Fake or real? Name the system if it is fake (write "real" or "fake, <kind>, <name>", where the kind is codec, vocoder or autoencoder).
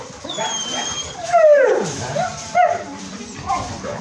fake, vocoder, BigVGAN v2